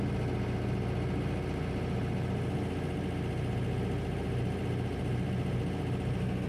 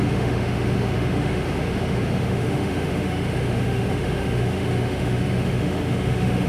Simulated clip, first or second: second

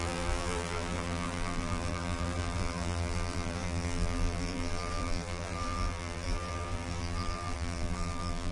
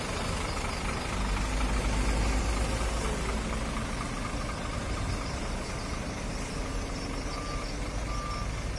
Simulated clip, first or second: first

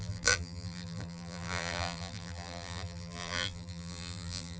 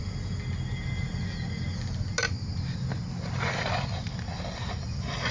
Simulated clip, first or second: first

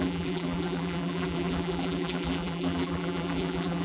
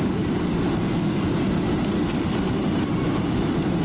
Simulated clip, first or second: first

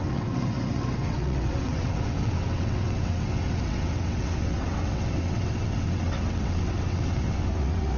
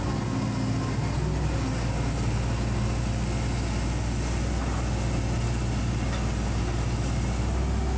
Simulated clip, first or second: first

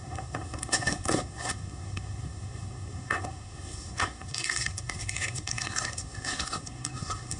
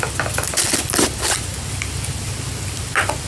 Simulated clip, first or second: first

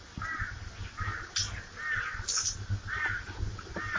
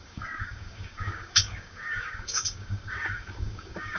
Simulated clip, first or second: second